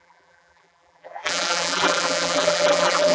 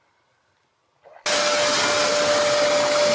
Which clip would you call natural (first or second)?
second